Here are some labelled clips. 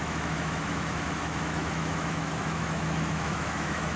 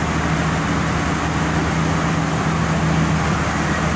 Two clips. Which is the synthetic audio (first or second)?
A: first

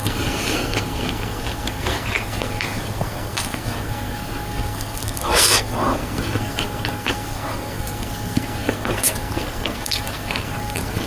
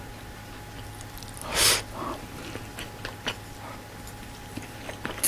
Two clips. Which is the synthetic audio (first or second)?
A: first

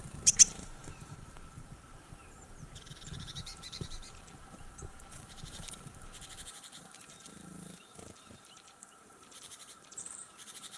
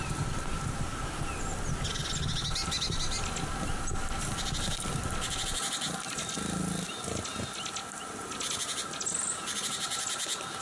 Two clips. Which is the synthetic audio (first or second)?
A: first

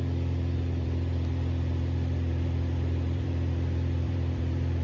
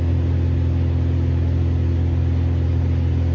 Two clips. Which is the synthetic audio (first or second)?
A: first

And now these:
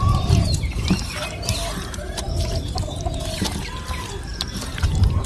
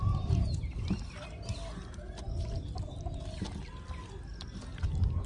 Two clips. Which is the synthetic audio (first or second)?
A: first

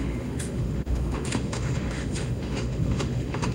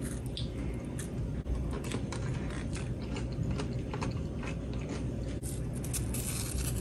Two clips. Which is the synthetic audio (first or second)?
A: first